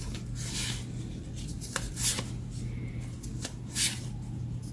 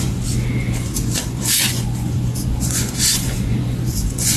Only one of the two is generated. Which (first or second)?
second